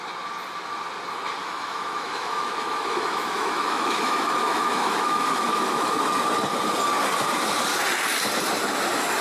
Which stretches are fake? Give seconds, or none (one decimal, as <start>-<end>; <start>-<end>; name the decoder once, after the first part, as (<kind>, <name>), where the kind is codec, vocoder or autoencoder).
1.4-5.9 (autoencoder, DAC-VAE)